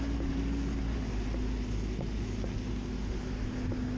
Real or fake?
real